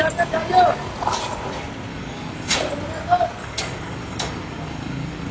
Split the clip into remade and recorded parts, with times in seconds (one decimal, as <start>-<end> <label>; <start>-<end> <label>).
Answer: 0.0-1.9 recorded; 1.9-2.5 remade; 2.5-3.4 recorded; 3.4-5.3 remade